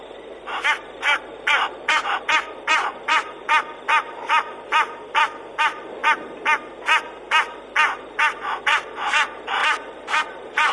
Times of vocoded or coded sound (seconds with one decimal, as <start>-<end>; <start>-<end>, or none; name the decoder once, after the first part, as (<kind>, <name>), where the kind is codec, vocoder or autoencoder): 0.0-4.7 (vocoder, BigVGAN v2); 5.6-6.0; 8.0-10.7